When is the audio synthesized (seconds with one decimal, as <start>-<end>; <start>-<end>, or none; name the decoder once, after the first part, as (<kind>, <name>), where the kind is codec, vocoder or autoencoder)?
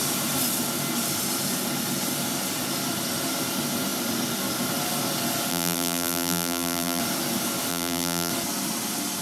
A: 5.5-7.0 (vocoder, BigVGAN v2); 7.7-8.3